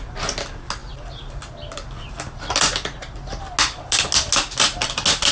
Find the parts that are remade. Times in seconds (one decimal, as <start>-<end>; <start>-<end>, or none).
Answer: none